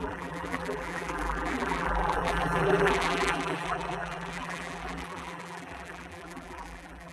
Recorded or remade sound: remade